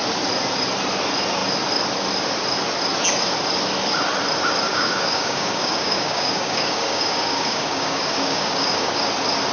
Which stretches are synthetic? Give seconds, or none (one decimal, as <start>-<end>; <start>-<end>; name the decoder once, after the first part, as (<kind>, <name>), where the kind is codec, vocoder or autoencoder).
4.7-9.0 (codec, DAC)